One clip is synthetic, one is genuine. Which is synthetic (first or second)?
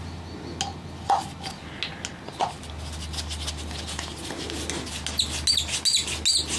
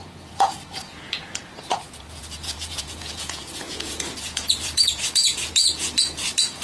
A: second